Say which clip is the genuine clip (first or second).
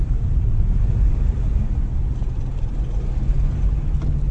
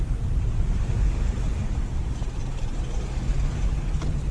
first